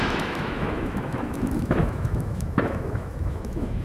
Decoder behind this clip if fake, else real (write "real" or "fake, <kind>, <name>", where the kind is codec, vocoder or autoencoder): fake, autoencoder, DAC-VAE